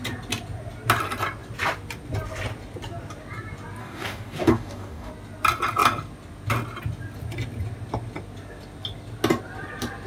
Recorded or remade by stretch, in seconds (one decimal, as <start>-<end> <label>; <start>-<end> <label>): 0.0-3.8 recorded; 3.8-5.1 remade; 5.1-10.1 recorded